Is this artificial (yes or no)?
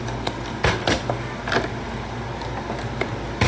no